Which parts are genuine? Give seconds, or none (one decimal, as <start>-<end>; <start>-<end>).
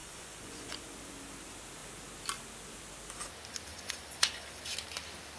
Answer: 0.8-3.7; 4.6-5.4